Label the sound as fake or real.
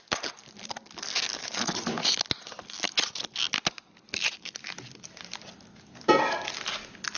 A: real